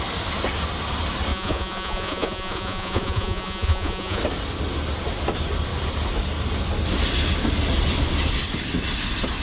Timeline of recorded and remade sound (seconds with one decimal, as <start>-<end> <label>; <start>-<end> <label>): 0.0-1.3 recorded; 1.3-4.2 remade; 4.2-9.4 recorded